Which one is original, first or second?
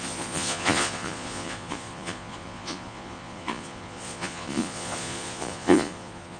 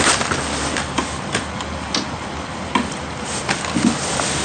second